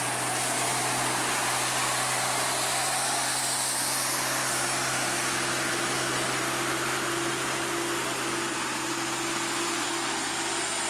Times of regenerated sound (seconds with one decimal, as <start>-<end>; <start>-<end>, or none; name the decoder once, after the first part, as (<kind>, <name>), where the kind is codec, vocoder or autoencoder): none